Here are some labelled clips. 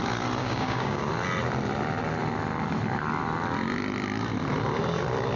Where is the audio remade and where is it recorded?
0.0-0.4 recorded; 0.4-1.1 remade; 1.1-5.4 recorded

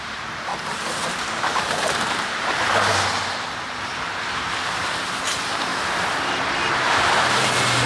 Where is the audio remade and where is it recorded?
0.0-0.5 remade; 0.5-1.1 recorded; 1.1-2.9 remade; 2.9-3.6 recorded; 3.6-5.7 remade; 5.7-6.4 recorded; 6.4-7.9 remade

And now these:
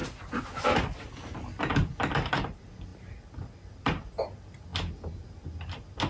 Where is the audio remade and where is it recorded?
0.0-6.1 recorded